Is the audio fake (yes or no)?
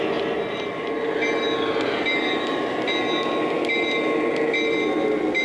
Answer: no